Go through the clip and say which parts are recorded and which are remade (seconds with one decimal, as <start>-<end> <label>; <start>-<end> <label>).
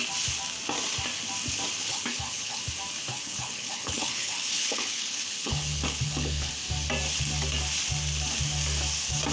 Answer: 0.0-1.8 recorded; 1.8-2.6 remade; 2.6-3.1 recorded; 3.1-6.5 remade; 6.5-9.3 recorded